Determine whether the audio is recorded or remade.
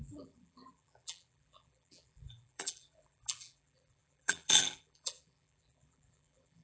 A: remade